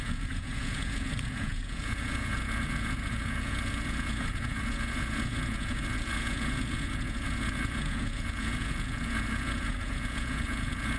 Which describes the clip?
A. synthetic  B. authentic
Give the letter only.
A